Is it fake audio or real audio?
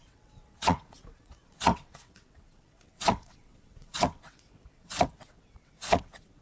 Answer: fake